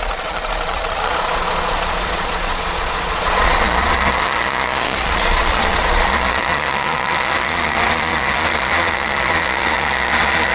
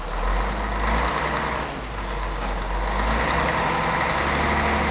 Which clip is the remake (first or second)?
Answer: first